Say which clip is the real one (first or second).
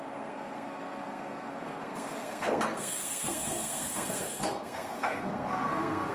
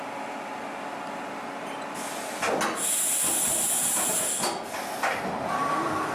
second